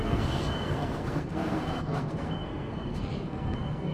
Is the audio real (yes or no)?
no